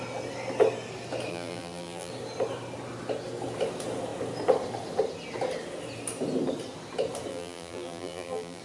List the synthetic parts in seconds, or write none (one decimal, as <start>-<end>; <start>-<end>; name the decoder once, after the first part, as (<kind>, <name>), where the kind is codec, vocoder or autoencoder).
1.3-2.1 (vocoder, BigVGAN v2); 7.3-8.6